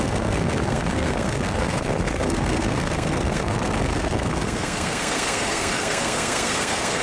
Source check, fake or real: fake